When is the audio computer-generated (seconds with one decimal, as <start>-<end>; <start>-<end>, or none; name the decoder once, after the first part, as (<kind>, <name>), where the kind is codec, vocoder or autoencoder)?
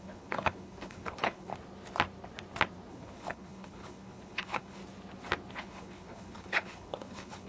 0.0-1.5 (codec, HILCodec); 2.9-4.8; 5.5-7.5